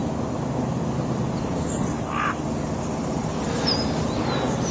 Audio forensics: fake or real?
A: real